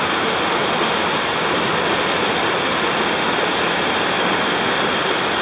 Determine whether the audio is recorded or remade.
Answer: recorded